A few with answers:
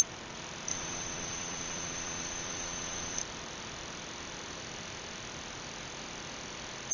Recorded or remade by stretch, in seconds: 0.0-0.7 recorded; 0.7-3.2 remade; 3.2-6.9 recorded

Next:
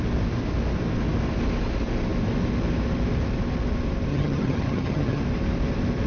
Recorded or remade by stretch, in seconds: 0.0-4.1 recorded; 4.1-5.2 remade; 5.2-6.1 recorded

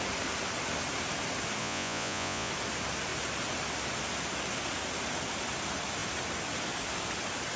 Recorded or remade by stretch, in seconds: 0.0-1.6 recorded; 1.6-2.5 remade; 2.5-7.6 recorded

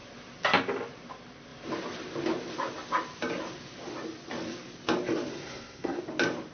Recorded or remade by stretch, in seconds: 0.0-5.3 recorded; 5.3-6.0 remade; 6.0-6.5 recorded